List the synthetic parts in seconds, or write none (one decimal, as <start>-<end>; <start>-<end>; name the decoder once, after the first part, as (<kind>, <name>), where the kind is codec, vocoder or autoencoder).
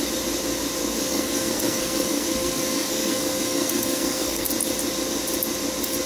0.8-4.5 (codec, SNAC)